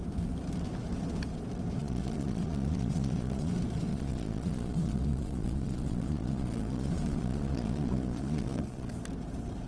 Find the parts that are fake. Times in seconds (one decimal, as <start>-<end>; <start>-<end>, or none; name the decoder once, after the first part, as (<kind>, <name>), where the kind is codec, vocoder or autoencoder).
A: 1.8-3.5 (vocoder, Vocos); 3.9-8.9